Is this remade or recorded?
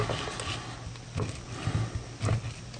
recorded